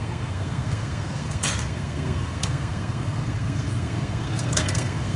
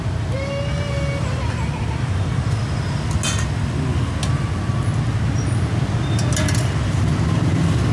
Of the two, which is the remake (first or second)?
first